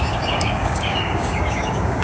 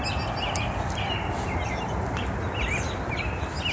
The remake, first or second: first